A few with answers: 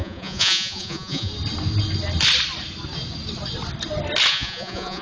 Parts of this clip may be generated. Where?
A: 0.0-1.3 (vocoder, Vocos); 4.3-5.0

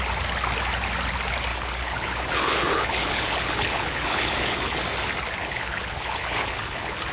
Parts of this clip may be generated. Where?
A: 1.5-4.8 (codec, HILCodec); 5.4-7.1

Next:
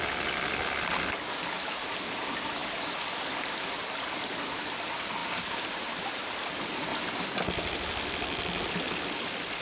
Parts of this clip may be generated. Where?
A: none

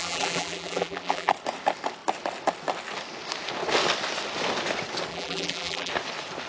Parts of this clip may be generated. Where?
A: 0.0-1.3 (vocoder, BigVGAN v2); 5.1-5.9

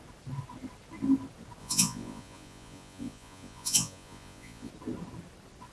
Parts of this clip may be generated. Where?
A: 1.6-4.7 (vocoder, Vocos)